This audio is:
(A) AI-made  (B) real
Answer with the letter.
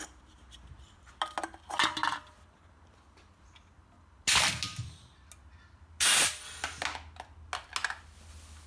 B